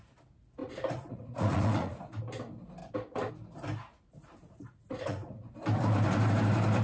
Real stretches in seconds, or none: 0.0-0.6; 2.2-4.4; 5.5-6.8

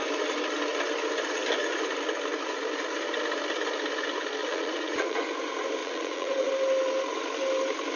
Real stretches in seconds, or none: 0.0-4.4; 5.2-5.8; 6.5-8.0

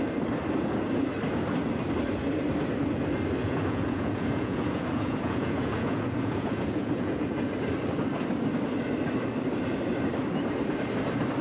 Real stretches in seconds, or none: 0.0-3.4; 7.5-11.4

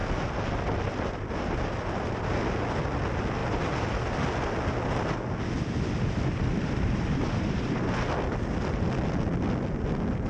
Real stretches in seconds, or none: 0.0-10.3

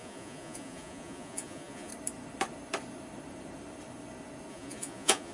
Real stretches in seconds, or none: 1.9-4.5

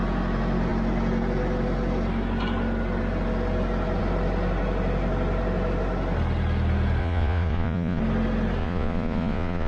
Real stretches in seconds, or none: 0.0-7.0; 8.0-8.6

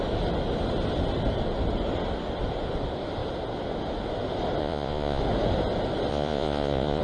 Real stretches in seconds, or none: 0.0-4.6; 5.2-6.1